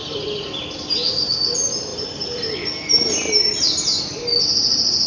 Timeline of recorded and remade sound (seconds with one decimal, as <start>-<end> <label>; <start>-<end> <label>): 0.0-5.1 recorded